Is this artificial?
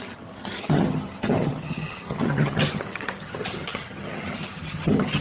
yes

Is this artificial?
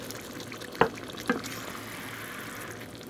no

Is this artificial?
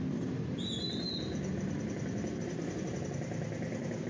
no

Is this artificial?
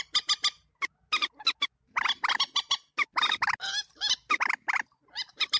no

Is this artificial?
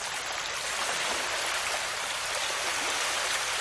no